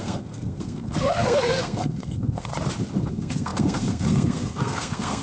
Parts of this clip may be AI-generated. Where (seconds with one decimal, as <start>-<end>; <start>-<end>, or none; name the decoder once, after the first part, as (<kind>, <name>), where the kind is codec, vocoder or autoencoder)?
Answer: 0.0-2.5 (codec, SNAC); 3.1-5.2